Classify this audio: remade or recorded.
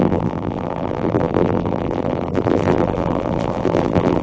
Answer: remade